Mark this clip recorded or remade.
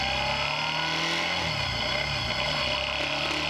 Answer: recorded